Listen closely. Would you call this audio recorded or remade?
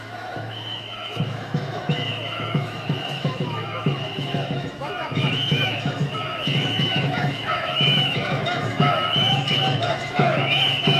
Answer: remade